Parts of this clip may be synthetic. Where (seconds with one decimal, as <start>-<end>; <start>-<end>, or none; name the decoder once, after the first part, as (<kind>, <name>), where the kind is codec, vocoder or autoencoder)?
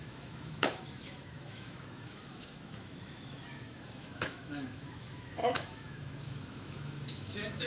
0.0-7.7 (autoencoder, DAC-VAE)